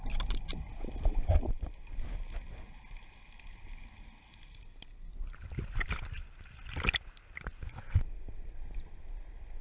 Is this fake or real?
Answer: real